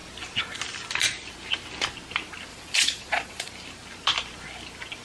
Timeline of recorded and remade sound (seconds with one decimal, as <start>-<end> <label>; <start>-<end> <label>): 0.0-2.5 recorded; 2.5-3.5 remade; 3.5-5.0 recorded